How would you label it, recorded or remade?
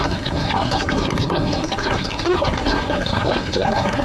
remade